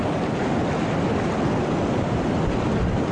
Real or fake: real